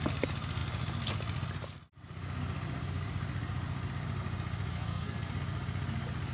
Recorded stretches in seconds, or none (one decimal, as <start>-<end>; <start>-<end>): 0.0-4.7; 5.3-6.3